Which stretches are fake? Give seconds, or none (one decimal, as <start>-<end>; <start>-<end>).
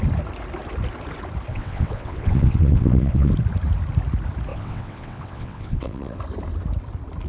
1.5-3.3; 4.5-6.2